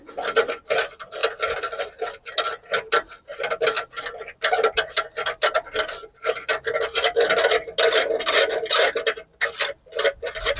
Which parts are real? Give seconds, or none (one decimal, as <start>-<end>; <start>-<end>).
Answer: 0.0-10.6